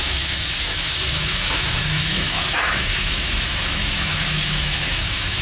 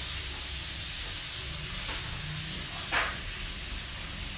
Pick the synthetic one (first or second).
first